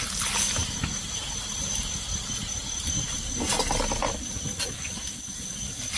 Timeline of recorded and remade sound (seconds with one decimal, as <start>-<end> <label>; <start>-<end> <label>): 0.0-6.0 recorded